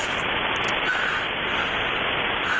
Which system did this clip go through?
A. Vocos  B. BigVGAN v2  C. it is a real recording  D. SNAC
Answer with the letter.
C